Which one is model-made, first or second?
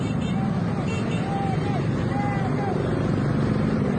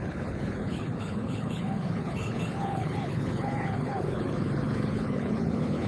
second